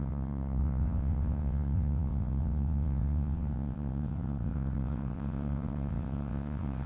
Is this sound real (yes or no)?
no